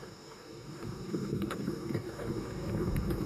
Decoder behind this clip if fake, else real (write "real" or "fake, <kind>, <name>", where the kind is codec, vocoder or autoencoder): fake, codec, DAC